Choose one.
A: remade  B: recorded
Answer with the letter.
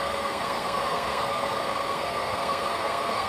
A